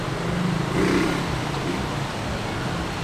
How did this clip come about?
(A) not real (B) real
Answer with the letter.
B